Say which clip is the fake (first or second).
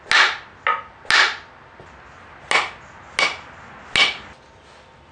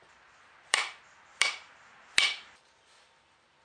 second